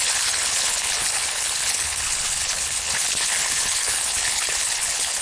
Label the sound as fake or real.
fake